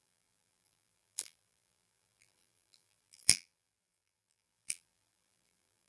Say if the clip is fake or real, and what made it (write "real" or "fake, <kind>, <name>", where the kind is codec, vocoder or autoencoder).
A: fake, vocoder, BigVGAN v2